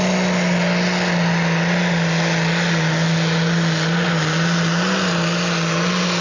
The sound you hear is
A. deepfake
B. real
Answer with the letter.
B